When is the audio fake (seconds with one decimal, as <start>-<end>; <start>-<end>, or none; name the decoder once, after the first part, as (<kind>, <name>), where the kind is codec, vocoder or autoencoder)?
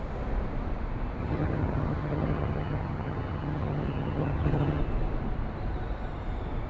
1.2-4.8 (vocoder, HiFi-GAN)